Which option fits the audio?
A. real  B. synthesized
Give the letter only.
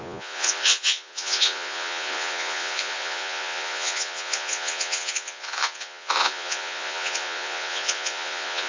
B